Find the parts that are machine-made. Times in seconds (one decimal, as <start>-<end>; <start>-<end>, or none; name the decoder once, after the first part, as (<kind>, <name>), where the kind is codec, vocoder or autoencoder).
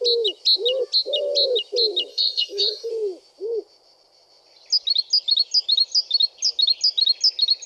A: 2.1-2.9 (codec, SNAC)